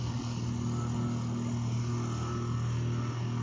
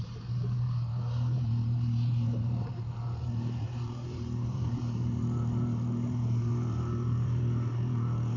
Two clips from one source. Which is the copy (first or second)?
second